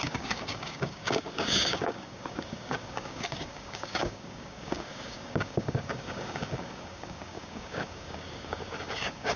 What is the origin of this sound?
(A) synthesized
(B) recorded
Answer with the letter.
A